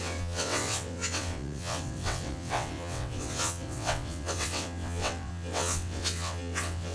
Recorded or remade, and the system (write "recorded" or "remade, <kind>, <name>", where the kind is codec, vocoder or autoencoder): remade, vocoder, WaveNeXt